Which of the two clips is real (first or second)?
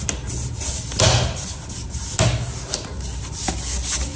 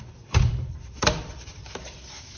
first